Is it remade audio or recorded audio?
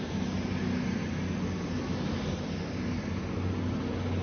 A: recorded